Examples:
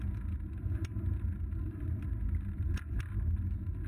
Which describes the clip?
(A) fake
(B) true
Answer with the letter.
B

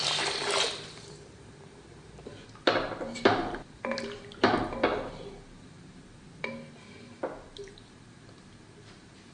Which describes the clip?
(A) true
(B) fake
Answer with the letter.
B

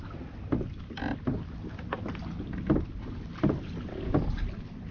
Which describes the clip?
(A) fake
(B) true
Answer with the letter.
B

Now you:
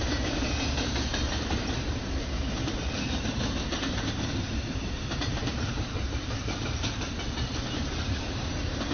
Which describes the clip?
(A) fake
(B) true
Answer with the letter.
A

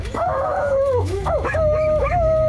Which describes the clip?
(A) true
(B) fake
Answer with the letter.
B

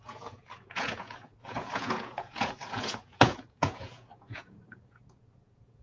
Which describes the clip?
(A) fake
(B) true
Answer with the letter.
A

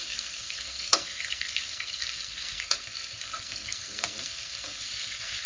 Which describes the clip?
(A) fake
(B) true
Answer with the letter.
A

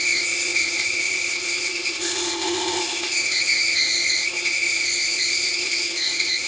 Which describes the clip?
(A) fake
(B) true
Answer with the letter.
A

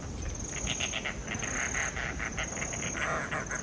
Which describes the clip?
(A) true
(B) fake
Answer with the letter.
A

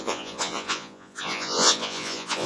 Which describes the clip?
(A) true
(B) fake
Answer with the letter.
B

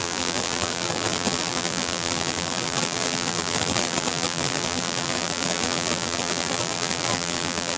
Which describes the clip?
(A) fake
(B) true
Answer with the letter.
A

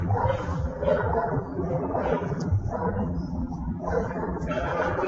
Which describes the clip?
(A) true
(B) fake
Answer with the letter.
B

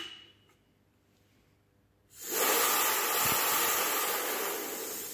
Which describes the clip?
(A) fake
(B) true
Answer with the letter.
B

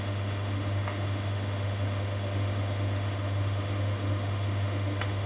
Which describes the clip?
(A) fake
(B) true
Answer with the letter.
A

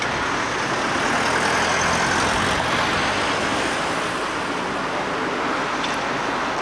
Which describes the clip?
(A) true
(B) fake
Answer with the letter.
A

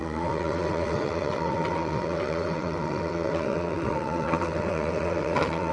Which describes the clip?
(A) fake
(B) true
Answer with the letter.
A